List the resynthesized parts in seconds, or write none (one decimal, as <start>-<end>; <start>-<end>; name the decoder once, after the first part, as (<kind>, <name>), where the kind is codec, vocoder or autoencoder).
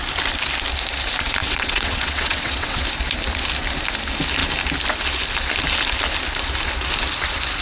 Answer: 1.4-2.8 (vocoder, WaveNeXt)